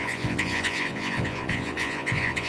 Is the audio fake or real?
fake